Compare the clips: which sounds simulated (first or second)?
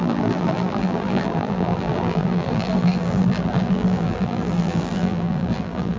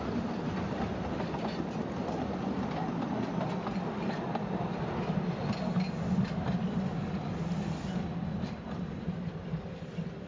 first